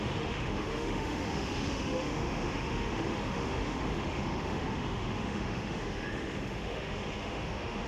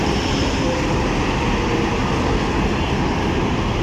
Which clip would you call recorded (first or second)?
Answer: second